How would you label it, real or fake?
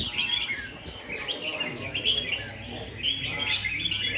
real